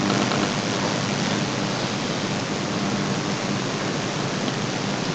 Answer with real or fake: real